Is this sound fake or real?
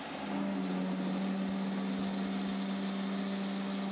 real